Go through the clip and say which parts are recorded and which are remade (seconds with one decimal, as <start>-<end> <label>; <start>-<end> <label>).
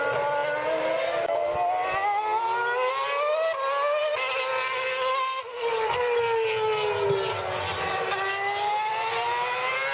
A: 0.0-9.9 recorded